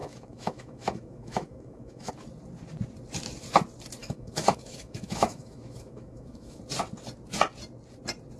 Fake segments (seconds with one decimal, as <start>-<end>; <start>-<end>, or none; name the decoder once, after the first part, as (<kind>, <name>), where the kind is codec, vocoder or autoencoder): 0.0-2.1 (autoencoder, DAC-VAE); 4.0-6.6